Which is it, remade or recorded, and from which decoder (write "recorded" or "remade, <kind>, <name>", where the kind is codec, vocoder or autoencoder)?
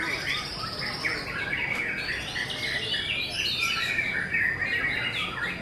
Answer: recorded